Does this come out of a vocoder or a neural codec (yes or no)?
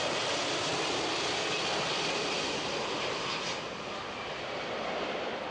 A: no